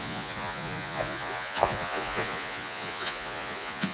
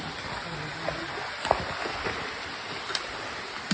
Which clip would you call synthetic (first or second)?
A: first